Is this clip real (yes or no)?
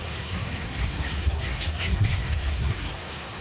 no